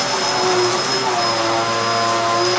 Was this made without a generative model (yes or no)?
yes